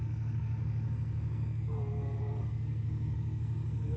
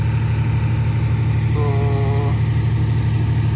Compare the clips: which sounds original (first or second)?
second